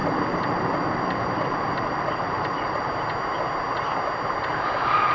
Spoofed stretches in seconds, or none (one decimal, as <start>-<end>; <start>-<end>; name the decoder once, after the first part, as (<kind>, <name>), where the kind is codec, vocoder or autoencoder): 0.0-2.9 (vocoder, BigVGAN v2)